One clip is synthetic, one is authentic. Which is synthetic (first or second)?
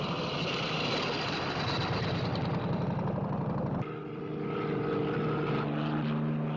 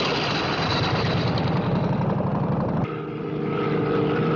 second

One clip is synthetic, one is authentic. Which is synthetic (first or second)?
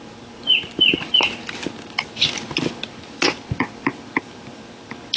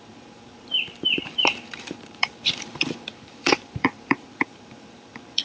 second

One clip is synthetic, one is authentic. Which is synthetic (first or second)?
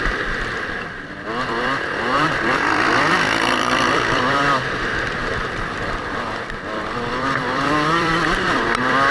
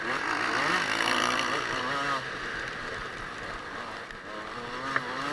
first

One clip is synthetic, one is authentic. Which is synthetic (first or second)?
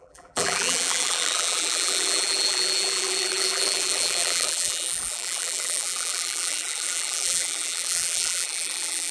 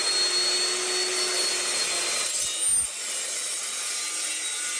first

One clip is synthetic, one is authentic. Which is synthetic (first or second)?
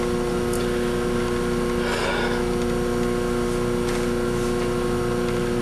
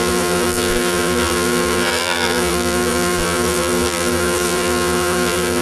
second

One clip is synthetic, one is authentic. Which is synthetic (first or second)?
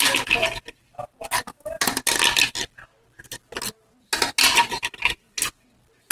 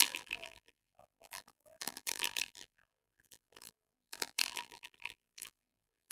second